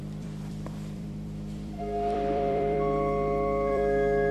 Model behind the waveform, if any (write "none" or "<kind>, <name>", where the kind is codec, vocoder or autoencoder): vocoder, BigVGAN v2